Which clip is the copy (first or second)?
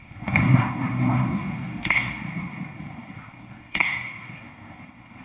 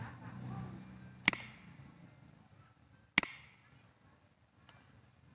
first